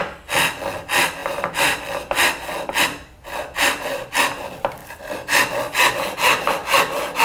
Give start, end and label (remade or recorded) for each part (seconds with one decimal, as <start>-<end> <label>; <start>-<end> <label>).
0.0-7.2 recorded